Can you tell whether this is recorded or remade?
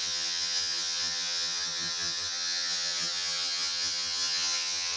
remade